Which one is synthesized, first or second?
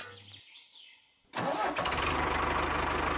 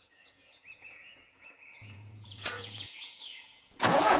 second